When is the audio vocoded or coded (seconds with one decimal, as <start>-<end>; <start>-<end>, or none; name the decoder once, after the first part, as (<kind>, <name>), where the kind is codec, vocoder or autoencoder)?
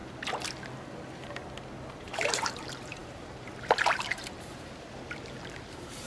2.0-6.1 (vocoder, BigVGAN v2)